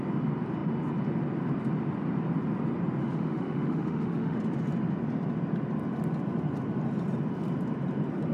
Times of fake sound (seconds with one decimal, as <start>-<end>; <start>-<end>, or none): 3.0-4.4